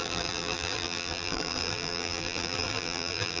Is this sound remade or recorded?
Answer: remade